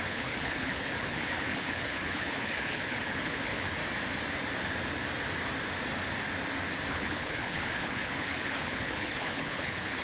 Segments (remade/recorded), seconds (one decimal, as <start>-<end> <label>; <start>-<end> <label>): 0.0-3.8 remade; 3.8-6.9 recorded; 6.9-10.0 remade